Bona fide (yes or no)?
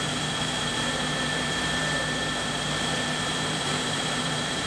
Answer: no